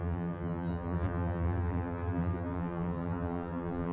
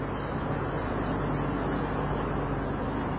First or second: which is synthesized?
first